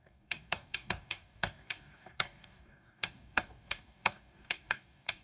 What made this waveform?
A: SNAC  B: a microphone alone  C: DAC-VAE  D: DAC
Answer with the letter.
D